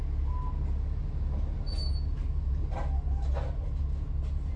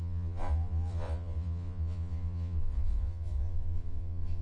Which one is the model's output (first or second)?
second